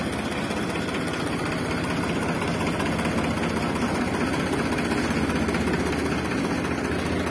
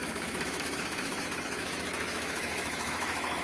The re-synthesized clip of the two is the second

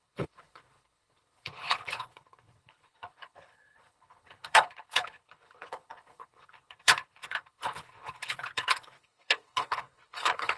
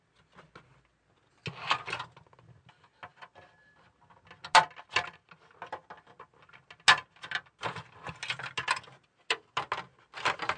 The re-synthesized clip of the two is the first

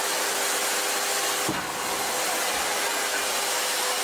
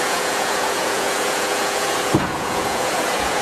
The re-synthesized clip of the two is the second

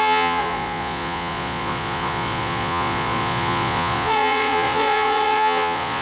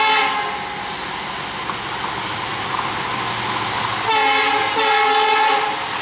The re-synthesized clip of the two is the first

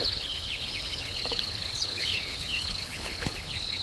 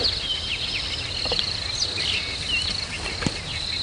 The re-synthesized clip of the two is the first